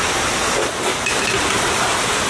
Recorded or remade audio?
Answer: recorded